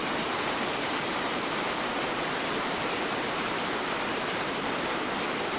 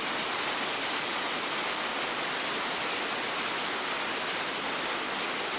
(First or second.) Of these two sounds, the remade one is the first